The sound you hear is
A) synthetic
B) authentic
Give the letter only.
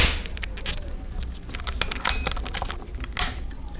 B